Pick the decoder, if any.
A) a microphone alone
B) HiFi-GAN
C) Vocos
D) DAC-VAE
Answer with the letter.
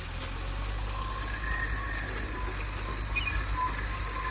A